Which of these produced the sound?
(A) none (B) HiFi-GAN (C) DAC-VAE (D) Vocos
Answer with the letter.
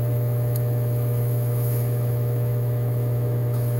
C